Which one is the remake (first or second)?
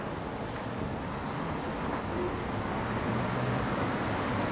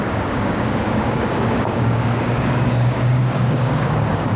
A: second